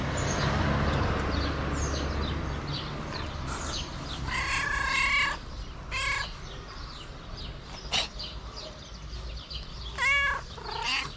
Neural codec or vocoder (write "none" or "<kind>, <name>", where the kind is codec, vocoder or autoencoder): none